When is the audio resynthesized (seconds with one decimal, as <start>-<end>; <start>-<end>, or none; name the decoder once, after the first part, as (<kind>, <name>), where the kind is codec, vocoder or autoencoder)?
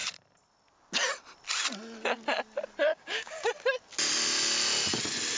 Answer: 2.9-3.5 (codec, DAC)